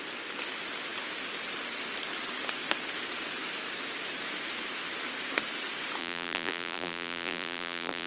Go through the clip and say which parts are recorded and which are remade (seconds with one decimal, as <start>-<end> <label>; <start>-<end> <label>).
0.0-6.0 recorded; 6.0-8.1 remade